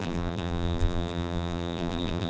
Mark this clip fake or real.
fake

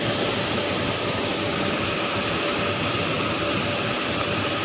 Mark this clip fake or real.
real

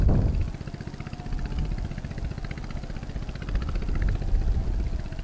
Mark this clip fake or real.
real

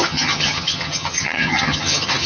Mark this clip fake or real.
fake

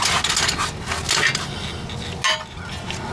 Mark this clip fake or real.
real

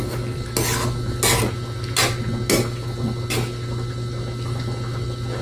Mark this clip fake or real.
real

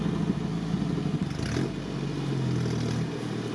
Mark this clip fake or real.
real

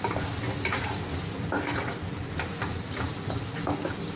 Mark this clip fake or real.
real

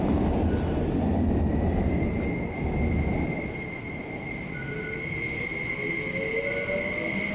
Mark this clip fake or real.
real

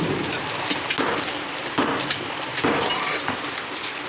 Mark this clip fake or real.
real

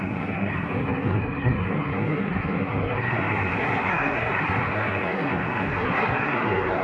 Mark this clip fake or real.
fake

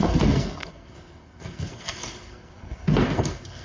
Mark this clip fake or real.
fake